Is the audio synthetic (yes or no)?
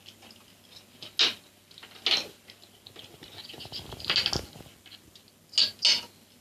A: no